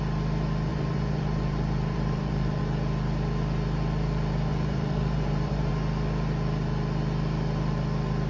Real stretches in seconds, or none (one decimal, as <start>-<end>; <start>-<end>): 0.0-0.7; 2.6-4.5; 5.7-8.3